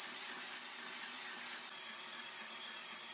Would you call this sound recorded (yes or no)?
yes